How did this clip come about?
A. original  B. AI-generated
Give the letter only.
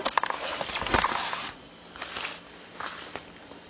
A